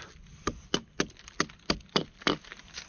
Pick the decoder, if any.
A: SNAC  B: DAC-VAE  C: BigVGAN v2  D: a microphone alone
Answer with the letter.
D